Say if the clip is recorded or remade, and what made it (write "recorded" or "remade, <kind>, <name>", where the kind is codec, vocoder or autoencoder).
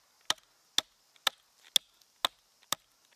recorded